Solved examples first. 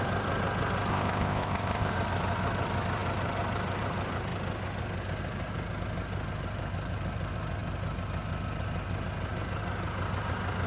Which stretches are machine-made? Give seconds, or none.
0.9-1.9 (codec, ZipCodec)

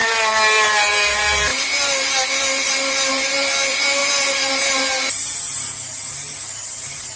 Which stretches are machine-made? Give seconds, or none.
0.7-7.2 (vocoder, BigVGAN v2)

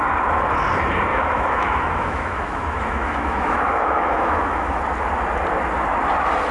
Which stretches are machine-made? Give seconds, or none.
1.1-4.8 (autoencoder, DAC-VAE)